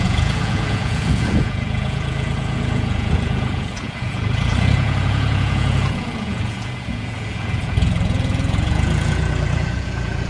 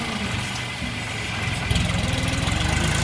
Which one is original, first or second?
second